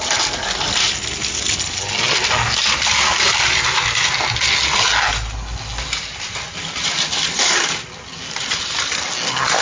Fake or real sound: real